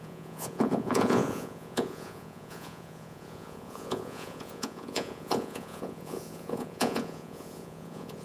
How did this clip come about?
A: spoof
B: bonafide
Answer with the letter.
A